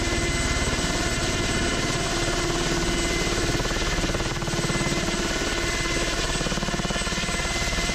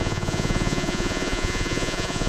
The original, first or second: first